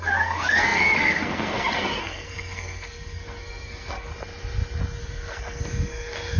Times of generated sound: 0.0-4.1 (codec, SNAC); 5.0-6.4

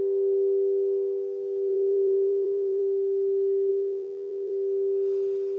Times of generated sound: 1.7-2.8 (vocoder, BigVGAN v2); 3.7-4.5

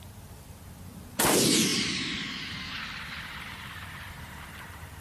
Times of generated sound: none

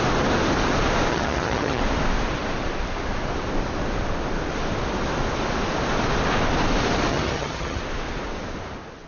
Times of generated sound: 1.1-1.8 (vocoder, HiFi-GAN); 7.1-7.8

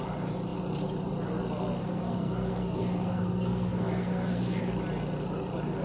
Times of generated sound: 1.8-4.6 (codec, SNAC)

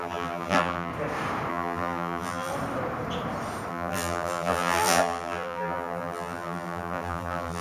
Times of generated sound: 0.0-0.9 (vocoder, BigVGAN v2); 1.5-2.5; 3.7-7.6

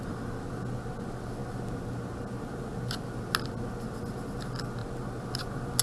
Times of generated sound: none

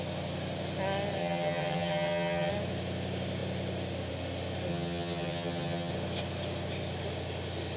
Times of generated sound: 1.2-2.5 (vocoder, HiFi-GAN); 4.7-5.9